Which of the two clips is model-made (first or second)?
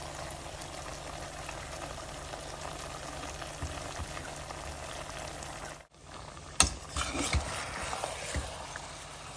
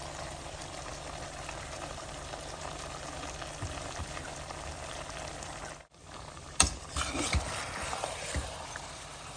second